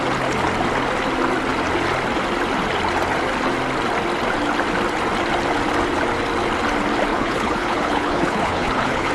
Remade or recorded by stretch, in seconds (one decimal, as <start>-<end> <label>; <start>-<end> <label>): 0.0-7.1 recorded; 7.1-9.1 remade